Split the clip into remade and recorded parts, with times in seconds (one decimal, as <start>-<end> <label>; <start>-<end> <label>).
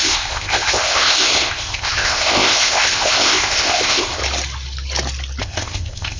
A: 0.0-4.2 remade; 4.2-5.4 recorded; 5.4-6.2 remade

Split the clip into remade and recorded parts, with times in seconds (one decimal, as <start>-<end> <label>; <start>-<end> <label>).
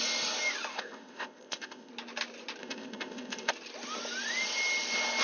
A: 0.0-0.7 recorded; 0.7-1.9 remade; 1.9-2.6 recorded; 2.6-3.5 remade; 3.5-5.2 recorded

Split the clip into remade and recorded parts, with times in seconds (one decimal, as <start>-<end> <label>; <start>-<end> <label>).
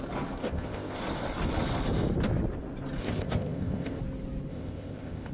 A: 0.0-0.4 recorded; 0.4-1.0 remade; 1.0-3.0 recorded; 3.0-4.0 remade; 4.0-4.5 recorded; 4.5-5.3 remade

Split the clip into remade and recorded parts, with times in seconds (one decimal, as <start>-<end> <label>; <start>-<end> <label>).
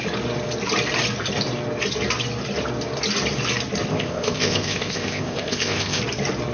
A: 0.0-3.9 recorded; 3.9-6.0 remade; 6.0-6.5 recorded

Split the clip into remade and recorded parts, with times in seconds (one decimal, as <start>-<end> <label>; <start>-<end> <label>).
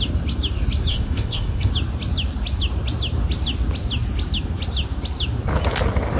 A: 0.0-0.9 recorded; 0.9-1.7 remade; 1.7-6.2 recorded